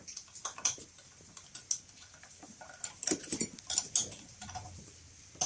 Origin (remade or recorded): recorded